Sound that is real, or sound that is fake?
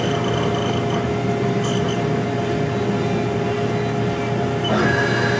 real